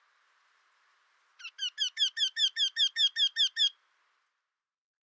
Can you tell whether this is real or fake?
real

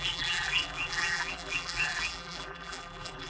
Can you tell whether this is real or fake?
fake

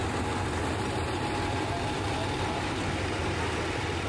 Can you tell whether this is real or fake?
real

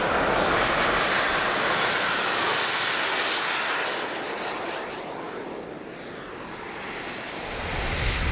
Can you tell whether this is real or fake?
real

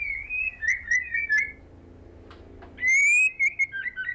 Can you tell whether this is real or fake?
real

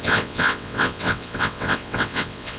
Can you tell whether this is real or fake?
fake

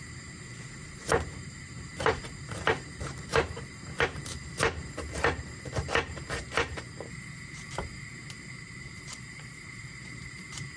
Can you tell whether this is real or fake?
fake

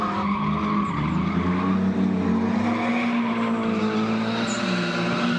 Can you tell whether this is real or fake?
real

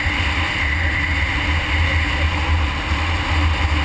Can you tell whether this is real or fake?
real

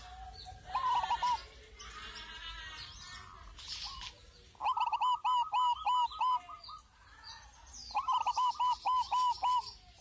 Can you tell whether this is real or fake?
real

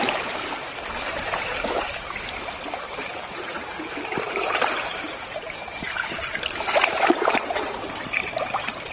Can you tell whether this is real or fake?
fake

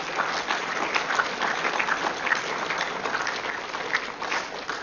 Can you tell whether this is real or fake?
real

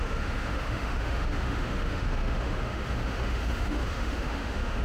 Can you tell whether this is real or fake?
fake